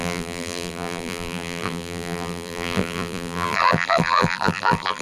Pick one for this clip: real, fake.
fake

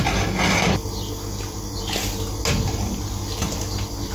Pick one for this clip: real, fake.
real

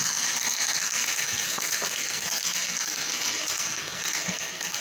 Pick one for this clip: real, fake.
fake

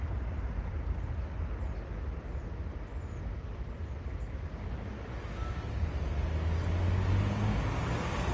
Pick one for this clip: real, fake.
real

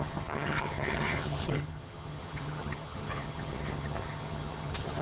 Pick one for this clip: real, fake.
fake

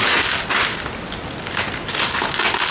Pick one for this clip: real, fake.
real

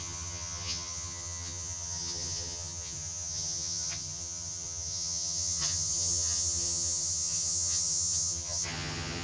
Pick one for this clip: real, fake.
fake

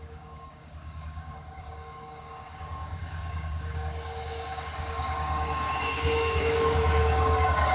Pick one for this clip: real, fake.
fake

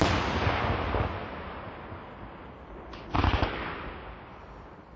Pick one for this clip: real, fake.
real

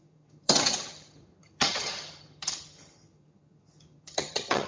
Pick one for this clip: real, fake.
fake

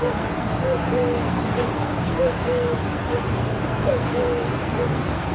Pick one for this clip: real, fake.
fake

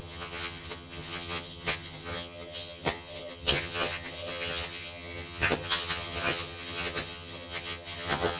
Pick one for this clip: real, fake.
fake